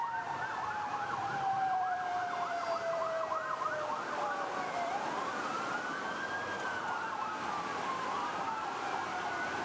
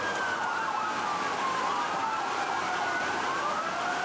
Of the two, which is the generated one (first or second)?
first